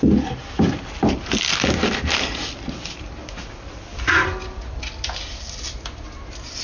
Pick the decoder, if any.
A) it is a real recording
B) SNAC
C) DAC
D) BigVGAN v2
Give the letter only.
A